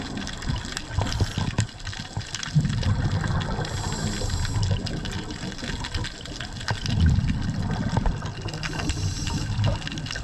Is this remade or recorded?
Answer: recorded